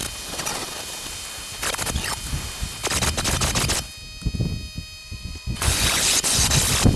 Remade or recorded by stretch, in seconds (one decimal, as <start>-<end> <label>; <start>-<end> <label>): 0.0-5.0 recorded; 5.0-6.5 remade; 6.5-7.0 recorded